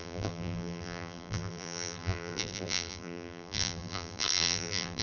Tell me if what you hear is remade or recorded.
remade